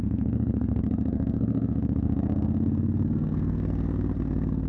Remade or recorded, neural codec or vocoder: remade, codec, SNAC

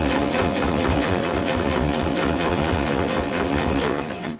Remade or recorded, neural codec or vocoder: remade, vocoder, WaveNeXt